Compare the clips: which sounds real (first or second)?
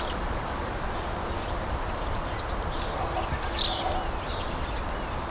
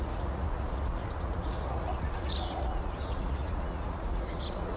first